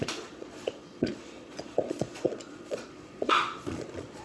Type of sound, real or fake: fake